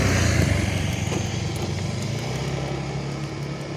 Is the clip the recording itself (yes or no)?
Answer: yes